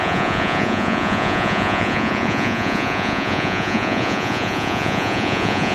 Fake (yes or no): yes